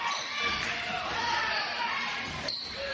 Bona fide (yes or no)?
no